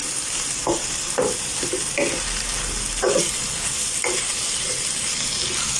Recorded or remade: recorded